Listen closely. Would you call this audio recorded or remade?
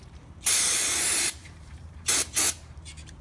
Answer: remade